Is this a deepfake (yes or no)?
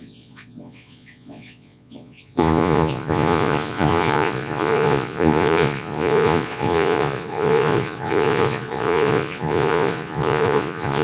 yes